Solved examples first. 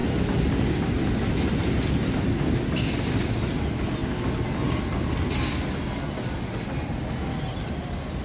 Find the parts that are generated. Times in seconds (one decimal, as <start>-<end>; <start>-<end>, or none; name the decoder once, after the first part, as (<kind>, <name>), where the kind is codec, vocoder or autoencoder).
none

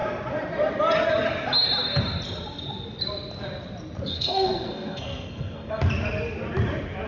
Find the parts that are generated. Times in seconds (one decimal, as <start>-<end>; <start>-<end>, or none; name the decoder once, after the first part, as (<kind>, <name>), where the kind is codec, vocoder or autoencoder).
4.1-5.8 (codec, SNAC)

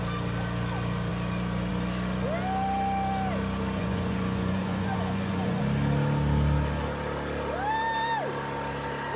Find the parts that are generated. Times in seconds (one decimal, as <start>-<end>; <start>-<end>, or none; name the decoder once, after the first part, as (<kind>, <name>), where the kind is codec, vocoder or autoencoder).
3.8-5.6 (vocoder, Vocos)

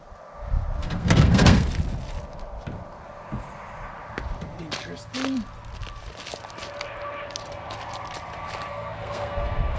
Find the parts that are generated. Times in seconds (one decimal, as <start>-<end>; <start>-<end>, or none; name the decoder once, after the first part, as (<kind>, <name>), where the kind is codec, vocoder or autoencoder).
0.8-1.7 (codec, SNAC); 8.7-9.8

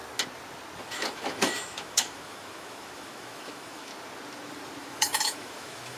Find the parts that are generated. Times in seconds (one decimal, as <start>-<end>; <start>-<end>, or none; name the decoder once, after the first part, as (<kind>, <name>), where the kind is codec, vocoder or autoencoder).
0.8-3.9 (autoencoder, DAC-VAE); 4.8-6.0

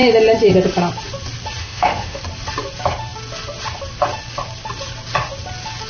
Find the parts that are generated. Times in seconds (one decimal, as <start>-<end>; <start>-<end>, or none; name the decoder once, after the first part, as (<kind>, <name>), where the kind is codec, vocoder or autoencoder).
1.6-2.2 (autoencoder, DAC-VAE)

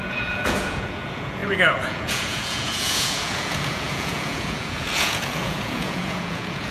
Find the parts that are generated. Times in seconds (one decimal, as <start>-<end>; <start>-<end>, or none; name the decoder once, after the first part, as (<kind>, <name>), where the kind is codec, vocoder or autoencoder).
0.0-6.7 (vocoder, Vocos)

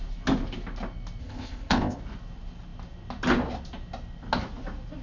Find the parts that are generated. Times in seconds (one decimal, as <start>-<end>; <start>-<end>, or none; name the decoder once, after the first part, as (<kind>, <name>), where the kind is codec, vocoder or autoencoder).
1.2-2.0 (codec, ZipCodec)